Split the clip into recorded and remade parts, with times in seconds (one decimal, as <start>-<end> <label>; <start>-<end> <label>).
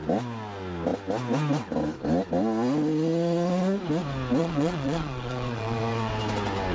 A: 0.0-4.4 recorded; 4.4-6.1 remade; 6.1-6.7 recorded